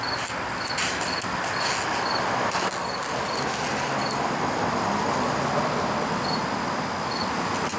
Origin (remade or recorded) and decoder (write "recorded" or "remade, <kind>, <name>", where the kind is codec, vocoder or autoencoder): recorded